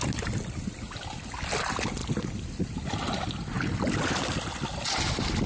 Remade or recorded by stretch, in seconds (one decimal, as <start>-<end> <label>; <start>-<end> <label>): 0.0-5.5 recorded